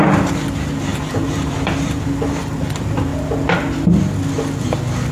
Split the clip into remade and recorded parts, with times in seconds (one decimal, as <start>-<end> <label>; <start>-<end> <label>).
0.0-3.1 remade; 3.1-5.1 recorded